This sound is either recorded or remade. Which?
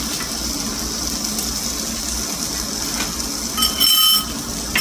recorded